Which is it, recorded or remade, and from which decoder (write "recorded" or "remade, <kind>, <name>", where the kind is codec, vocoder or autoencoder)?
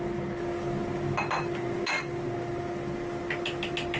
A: recorded